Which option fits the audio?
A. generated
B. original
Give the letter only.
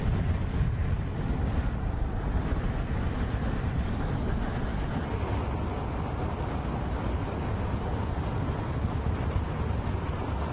B